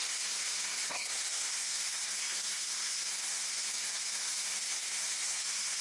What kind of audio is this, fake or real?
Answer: fake